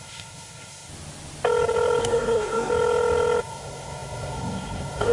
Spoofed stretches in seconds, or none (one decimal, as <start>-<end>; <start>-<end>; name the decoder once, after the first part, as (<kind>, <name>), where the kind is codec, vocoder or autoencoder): 0.0-0.9 (codec, SNAC); 2.0-2.7; 3.4-5.1